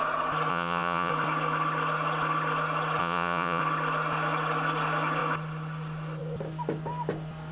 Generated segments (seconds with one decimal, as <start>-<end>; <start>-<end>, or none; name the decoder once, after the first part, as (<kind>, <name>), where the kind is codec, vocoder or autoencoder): 0.5-1.1 (vocoder, Vocos); 3.0-3.6